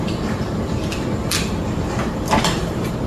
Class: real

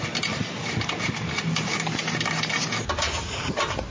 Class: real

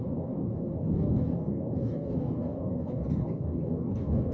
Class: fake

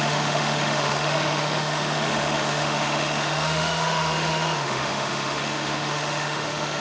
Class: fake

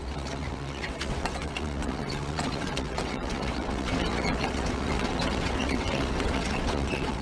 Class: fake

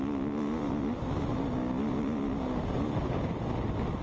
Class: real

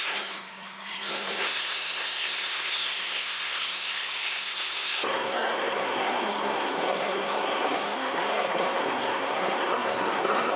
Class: fake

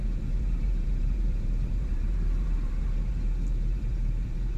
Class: fake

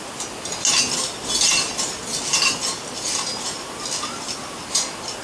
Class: real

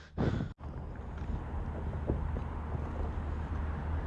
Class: real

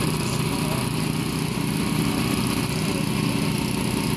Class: real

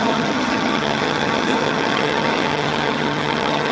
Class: fake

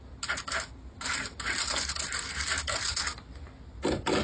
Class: real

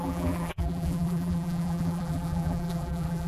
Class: fake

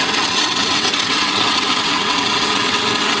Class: fake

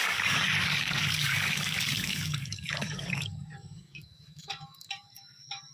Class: fake